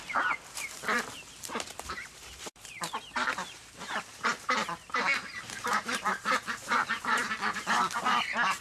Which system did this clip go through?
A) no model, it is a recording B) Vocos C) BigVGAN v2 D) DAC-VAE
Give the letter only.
C